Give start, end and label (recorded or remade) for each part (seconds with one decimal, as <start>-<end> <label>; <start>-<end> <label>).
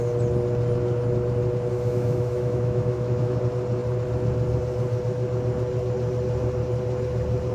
0.0-1.7 recorded; 1.7-3.4 remade; 3.4-7.5 recorded